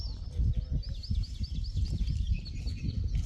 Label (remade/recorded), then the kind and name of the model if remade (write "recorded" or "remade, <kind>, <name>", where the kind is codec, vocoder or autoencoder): recorded